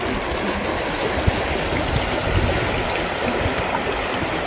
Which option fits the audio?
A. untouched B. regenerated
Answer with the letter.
A